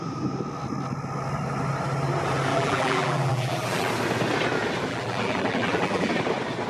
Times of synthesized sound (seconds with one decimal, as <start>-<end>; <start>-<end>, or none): 2.5-3.9; 4.9-6.1

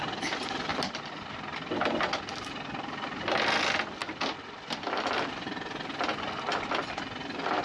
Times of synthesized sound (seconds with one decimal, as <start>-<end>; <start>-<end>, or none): none

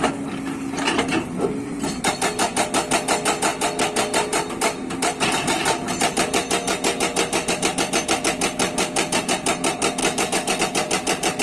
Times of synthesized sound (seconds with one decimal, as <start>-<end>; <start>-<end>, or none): 10.0-10.6

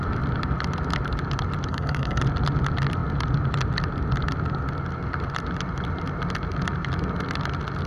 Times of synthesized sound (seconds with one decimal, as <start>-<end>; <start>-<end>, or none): 1.7-2.2

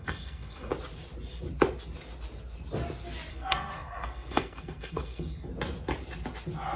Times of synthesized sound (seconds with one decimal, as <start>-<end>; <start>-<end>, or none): 0.0-0.7; 3.3-5.5

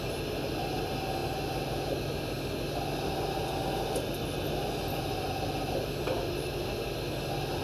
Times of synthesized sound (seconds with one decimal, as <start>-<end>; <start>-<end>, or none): none

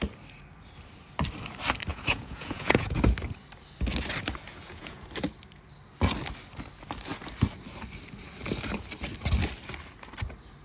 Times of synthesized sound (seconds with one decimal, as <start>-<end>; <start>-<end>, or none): 1.9-3.0; 4.5-5.1